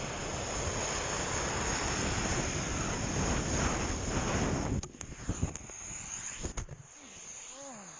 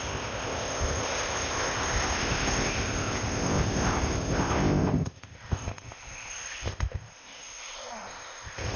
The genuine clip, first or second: first